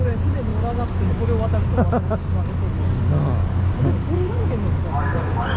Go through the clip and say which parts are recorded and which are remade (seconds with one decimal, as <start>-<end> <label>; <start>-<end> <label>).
0.0-3.4 recorded; 3.4-4.3 remade; 4.3-5.6 recorded